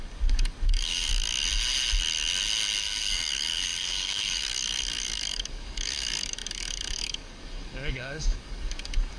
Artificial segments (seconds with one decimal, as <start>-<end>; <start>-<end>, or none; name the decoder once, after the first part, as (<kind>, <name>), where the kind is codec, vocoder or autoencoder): 0.0-1.1 (codec, DAC); 2.8-9.2